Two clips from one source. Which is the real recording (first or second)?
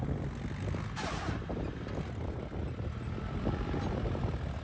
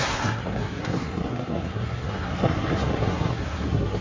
first